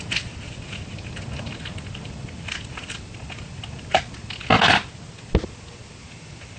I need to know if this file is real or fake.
real